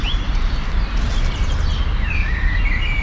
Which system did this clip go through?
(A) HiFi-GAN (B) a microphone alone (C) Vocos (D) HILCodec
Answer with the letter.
B